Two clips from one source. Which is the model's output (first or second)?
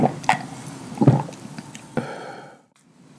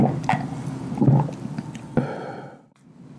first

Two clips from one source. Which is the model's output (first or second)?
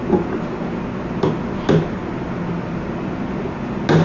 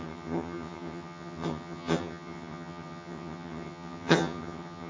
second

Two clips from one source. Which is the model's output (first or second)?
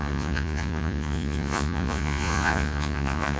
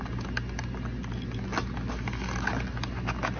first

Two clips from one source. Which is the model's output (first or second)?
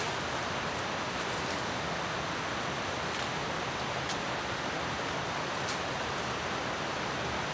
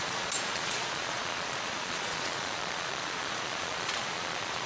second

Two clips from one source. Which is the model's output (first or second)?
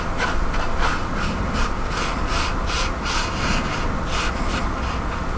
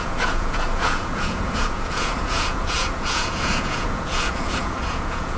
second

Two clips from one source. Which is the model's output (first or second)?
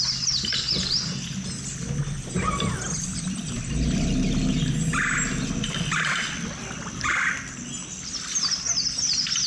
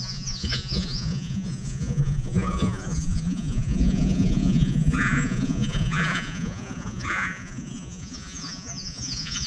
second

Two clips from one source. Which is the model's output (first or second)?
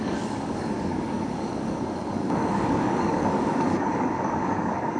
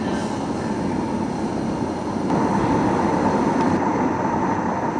first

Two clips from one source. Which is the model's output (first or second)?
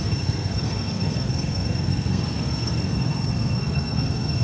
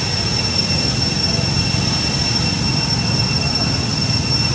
first